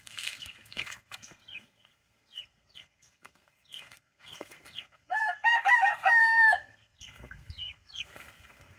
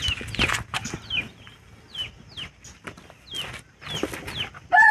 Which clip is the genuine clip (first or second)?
second